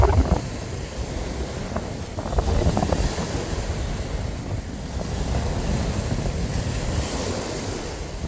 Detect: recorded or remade recorded